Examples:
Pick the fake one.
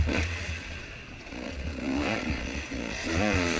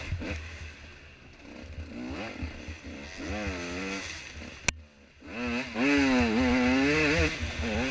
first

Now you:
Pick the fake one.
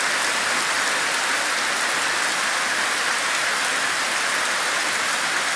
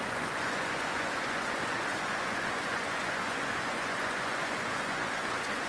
second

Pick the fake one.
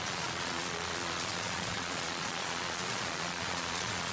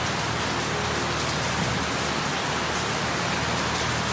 first